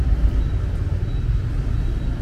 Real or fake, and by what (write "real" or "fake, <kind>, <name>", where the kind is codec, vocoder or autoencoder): real